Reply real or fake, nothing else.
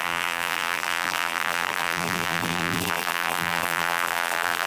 fake